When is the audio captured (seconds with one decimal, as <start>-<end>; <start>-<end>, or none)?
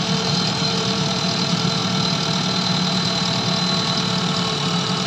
1.8-4.2